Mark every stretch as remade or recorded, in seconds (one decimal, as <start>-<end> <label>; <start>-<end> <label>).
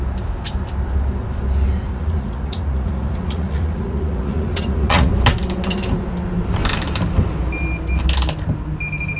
0.0-1.9 recorded; 1.9-5.1 remade; 5.1-9.2 recorded